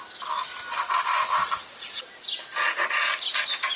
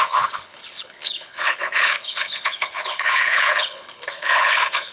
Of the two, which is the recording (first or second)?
first